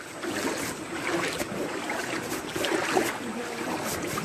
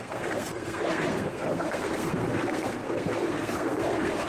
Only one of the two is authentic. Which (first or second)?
first